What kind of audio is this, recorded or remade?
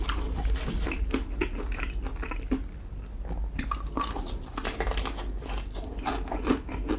recorded